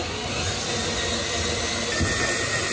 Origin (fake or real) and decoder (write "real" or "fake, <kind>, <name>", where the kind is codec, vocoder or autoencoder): real